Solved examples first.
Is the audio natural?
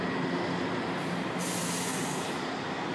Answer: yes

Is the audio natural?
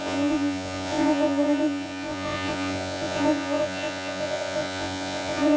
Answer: no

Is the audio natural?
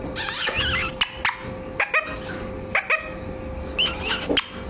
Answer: yes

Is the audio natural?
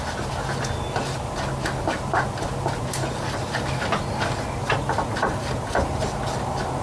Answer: yes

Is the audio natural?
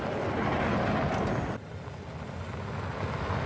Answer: yes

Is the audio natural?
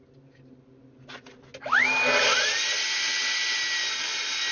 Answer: yes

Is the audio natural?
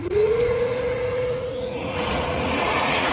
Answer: no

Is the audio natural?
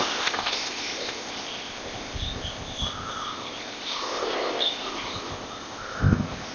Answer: no